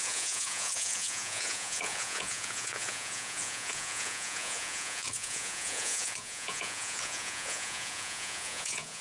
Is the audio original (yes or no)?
no